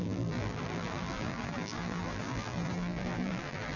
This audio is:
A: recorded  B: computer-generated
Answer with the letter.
B